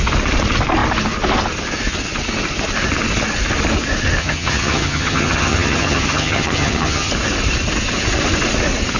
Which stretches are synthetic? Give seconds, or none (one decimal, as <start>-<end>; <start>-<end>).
4.2-7.1

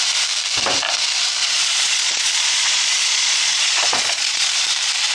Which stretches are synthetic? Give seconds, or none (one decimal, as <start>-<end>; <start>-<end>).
1.4-4.5

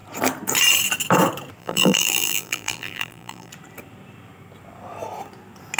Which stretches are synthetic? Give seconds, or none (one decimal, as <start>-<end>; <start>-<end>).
1.6-3.5

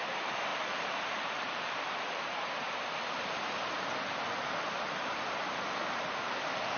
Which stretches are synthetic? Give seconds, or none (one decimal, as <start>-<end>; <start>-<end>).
0.0-6.8

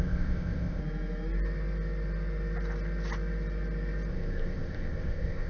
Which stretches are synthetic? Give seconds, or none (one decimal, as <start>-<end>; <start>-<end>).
0.0-0.8; 4.1-5.5

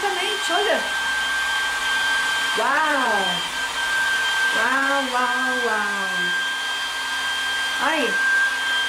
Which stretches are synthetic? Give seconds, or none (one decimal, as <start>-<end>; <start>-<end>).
1.8-4.9; 7.9-8.5

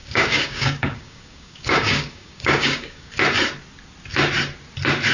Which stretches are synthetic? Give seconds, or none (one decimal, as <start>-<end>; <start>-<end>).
0.0-3.1

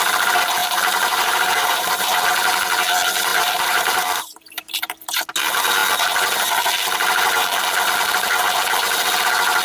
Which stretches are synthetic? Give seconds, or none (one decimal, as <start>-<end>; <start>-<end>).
0.6-1.9; 3.3-5.3